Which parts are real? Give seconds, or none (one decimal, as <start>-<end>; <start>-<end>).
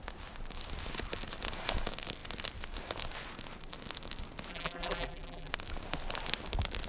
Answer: 0.0-4.5; 5.5-6.9